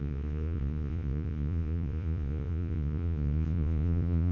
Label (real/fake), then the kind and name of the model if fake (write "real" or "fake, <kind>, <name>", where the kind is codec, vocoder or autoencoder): fake, vocoder, Vocos